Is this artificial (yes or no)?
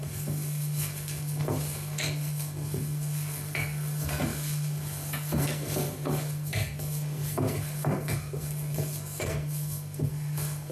yes